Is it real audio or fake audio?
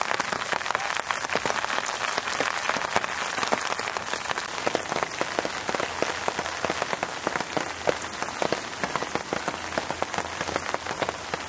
real